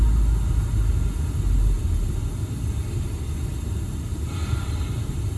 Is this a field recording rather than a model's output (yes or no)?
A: yes